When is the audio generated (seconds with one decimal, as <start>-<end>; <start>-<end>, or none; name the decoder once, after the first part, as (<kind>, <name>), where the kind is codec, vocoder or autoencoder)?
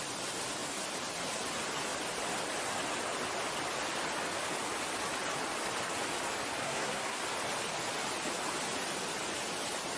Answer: 6.6-7.2 (codec, SNAC)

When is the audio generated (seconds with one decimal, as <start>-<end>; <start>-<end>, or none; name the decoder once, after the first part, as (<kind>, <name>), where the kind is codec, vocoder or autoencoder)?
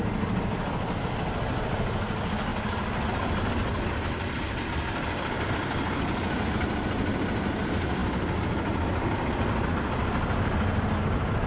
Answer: 2.5-3.1 (vocoder, BigVGAN v2)